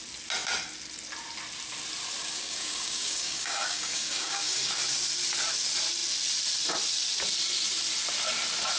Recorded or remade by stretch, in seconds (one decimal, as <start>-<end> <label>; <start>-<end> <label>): 0.0-2.2 recorded; 2.2-4.7 remade; 4.7-8.8 recorded